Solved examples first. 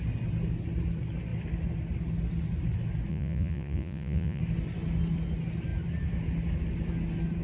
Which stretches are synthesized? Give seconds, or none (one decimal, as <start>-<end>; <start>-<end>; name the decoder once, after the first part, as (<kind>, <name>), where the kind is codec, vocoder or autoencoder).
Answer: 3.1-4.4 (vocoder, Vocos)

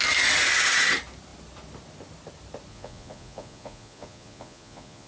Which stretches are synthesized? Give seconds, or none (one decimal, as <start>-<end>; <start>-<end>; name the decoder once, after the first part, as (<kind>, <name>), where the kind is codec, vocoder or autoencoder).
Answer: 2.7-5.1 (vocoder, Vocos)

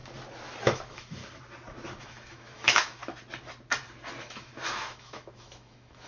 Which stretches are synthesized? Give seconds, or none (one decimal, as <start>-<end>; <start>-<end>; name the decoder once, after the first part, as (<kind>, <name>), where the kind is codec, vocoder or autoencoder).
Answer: 0.6-1.2 (autoencoder, DAC-VAE); 2.0-3.0; 4.2-6.1

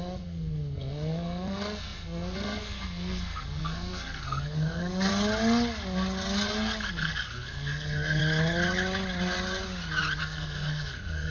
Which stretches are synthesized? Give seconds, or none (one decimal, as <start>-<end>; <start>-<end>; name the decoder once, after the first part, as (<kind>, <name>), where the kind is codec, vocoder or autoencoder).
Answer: 0.0-5.1 (codec, SNAC); 6.9-8.2; 10.2-11.3

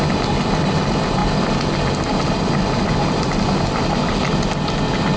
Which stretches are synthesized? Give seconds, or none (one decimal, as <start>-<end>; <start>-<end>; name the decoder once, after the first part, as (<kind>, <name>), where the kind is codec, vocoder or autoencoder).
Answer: none